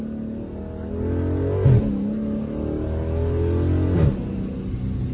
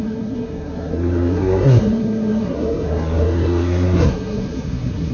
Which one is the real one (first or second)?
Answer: first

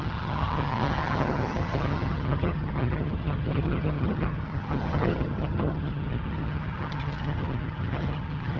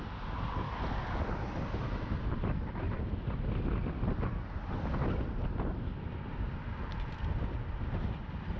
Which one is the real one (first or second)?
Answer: second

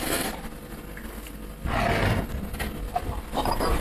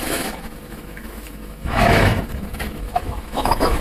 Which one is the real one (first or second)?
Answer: first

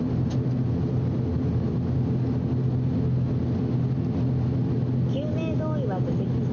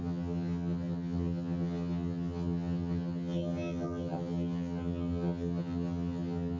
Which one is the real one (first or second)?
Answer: first